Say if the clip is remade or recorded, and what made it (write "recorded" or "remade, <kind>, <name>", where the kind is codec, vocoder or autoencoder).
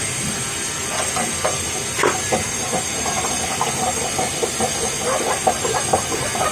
recorded